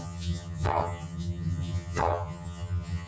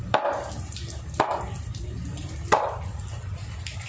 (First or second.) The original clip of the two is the second